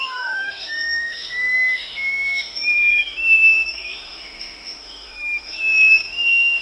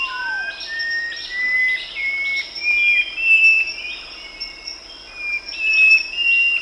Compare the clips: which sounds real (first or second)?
second